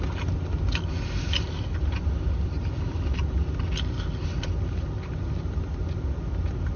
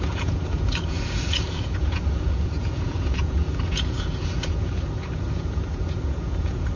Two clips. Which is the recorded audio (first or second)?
first